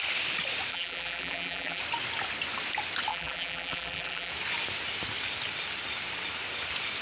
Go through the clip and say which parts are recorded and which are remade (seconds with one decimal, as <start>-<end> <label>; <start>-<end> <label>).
0.0-0.7 recorded; 0.7-1.8 remade; 1.8-3.1 recorded; 3.1-4.3 remade; 4.3-7.0 recorded